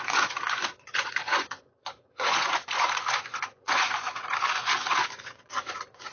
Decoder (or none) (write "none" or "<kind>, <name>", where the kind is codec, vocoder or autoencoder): vocoder, Vocos